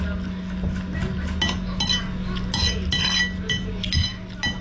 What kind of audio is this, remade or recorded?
recorded